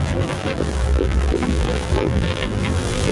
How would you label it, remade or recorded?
remade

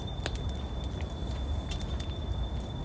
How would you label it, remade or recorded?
recorded